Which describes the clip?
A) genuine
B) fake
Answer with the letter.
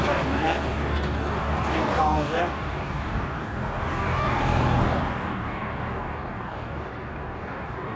B